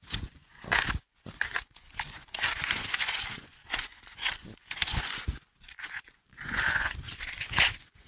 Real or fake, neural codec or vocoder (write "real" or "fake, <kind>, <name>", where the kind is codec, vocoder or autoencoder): fake, vocoder, Vocos